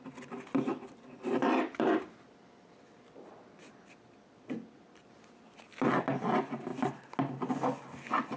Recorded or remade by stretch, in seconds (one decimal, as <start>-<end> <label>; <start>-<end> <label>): 0.0-8.4 recorded